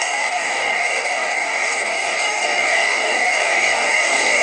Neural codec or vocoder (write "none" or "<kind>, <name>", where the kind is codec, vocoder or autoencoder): codec, DAC